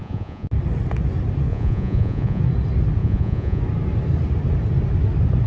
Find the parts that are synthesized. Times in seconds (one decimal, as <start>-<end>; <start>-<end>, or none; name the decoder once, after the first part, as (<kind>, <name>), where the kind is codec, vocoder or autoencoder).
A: 0.0-0.5 (vocoder, Vocos); 1.5-2.4; 3.0-3.6